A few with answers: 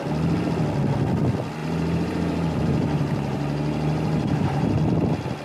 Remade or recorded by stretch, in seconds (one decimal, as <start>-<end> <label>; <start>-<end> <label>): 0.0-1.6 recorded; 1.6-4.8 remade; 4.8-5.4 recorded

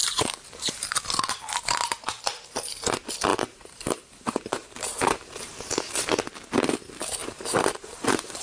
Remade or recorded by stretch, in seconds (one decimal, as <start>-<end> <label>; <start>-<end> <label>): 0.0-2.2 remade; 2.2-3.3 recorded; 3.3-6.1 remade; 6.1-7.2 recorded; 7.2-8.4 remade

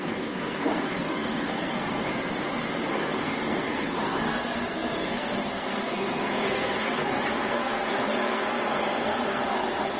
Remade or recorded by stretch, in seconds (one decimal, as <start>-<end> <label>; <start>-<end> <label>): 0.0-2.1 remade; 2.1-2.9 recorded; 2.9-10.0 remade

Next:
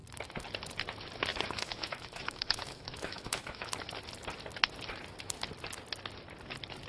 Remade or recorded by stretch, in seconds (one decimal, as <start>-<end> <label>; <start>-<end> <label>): 0.0-1.3 recorded; 1.3-3.7 remade; 3.7-6.9 recorded

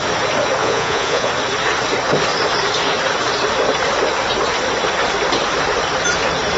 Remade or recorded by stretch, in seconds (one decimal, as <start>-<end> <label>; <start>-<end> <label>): 0.0-0.6 recorded; 0.6-1.3 remade; 1.3-6.6 recorded